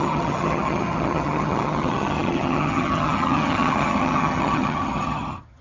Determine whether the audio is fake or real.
fake